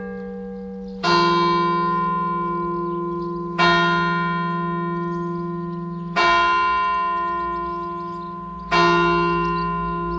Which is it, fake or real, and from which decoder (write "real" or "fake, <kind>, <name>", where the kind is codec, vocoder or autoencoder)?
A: real